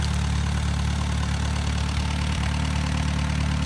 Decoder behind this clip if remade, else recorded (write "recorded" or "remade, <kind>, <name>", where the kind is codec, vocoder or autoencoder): recorded